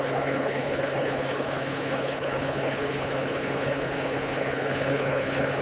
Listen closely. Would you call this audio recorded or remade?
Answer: remade